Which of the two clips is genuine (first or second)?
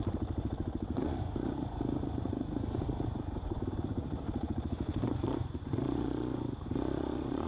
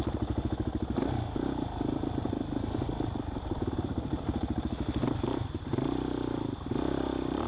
second